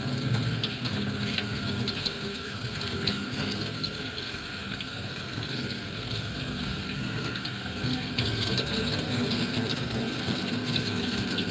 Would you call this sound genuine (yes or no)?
no